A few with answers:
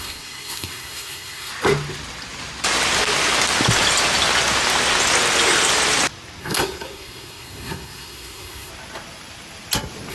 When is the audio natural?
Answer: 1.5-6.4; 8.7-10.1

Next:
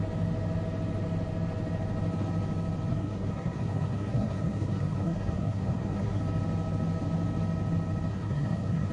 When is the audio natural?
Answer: 0.0-2.9; 6.2-8.1